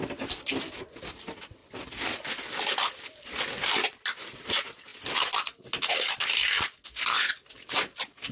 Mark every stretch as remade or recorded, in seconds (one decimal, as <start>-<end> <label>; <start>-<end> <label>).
0.0-8.3 recorded